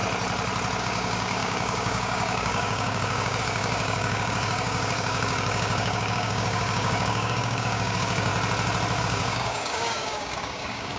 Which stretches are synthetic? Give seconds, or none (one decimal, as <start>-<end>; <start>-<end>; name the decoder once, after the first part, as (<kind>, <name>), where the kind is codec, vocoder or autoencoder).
0.8-8.3 (codec, DAC); 9.0-11.0